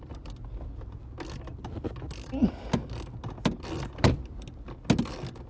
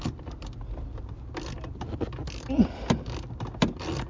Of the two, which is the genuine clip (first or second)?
first